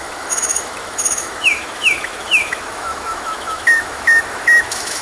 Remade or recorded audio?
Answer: remade